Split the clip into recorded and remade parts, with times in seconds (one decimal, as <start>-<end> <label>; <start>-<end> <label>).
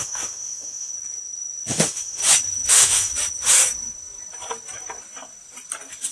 0.0-0.9 remade; 0.9-1.7 recorded; 1.7-2.2 remade; 2.2-2.7 recorded; 2.7-3.1 remade; 3.1-6.1 recorded